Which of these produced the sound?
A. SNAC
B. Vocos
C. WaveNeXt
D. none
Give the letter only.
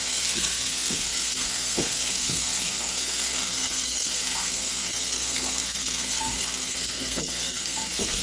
A